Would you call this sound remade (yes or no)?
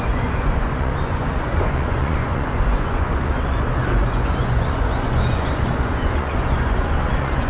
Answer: yes